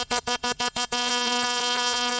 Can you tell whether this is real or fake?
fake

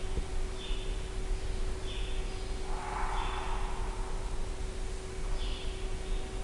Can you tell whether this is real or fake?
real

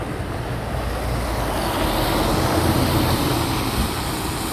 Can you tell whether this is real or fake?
real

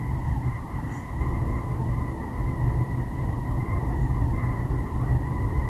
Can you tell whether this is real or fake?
real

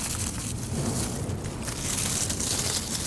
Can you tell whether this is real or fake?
real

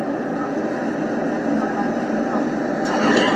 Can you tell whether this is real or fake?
real